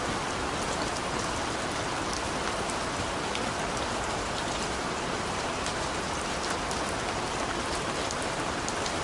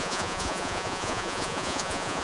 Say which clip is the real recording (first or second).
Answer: first